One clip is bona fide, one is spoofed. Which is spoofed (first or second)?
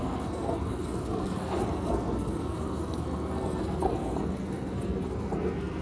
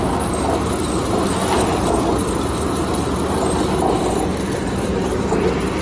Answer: first